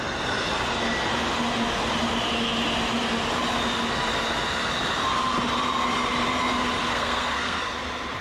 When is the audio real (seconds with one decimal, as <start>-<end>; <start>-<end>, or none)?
0.0-6.9; 7.6-8.2